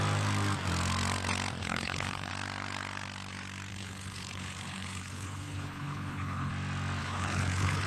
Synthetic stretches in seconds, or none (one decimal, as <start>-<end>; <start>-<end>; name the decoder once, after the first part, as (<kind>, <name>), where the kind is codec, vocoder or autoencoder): 1.6-2.3 (codec, HILCodec); 3.7-6.5; 7.0-7.9